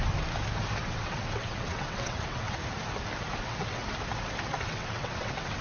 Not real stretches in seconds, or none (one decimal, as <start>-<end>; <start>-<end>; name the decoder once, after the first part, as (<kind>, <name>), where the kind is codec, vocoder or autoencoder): 0.8-2.6 (vocoder, WaveNeXt); 3.4-3.8; 4.5-5.6